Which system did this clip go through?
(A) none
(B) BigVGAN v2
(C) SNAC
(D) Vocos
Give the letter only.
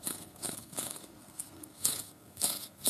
C